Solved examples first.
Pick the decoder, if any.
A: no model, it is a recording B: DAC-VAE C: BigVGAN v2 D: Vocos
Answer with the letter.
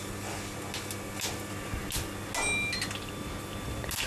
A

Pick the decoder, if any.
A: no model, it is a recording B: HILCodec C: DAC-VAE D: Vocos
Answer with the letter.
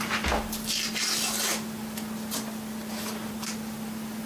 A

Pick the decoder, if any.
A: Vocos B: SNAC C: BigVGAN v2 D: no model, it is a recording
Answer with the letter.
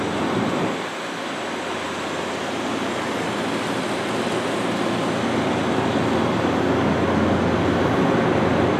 D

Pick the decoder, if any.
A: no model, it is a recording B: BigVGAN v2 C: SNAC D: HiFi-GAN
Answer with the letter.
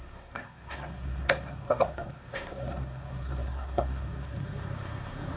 C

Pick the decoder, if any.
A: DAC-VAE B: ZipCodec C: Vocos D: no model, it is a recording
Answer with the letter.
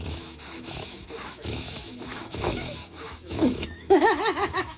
A